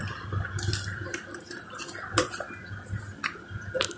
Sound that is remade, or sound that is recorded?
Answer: remade